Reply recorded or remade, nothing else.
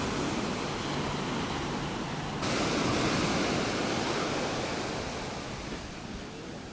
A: recorded